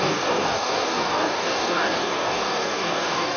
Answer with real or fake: fake